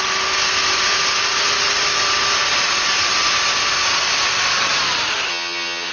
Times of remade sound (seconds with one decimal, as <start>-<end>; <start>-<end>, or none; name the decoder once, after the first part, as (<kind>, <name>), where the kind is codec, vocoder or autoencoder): 5.3-5.9 (vocoder, HiFi-GAN)